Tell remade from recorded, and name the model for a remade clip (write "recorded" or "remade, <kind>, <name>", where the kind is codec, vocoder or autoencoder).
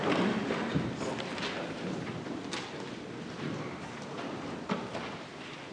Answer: recorded